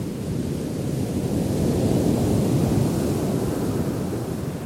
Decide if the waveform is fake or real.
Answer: real